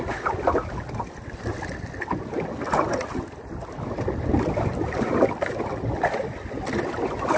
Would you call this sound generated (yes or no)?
no